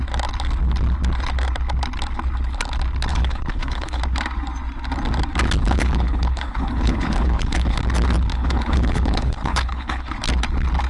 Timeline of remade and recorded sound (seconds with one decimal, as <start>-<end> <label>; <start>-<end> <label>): 0.0-3.1 recorded; 3.1-4.0 remade; 4.0-5.6 recorded; 5.6-7.8 remade; 7.8-8.3 recorded; 8.3-10.1 remade; 10.1-10.9 recorded